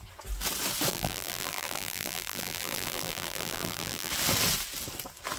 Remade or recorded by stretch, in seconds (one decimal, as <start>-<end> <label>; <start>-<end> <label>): 0.0-0.9 recorded; 0.9-4.1 remade; 4.1-5.4 recorded